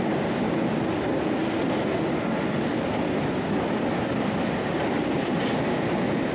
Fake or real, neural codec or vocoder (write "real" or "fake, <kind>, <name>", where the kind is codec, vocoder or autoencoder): real